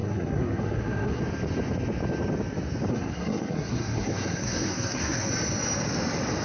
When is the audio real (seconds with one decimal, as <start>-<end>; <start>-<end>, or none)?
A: 1.2-2.9; 5.3-6.4